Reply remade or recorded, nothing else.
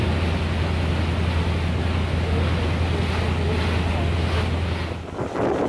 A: recorded